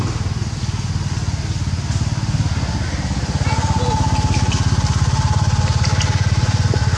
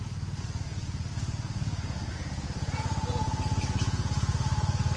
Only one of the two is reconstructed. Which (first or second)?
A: second